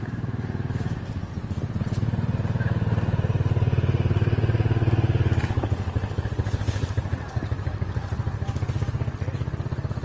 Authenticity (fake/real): real